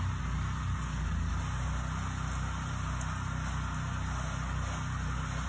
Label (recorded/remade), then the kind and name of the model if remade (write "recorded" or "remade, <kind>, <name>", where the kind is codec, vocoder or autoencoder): recorded